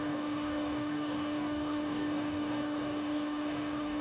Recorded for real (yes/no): no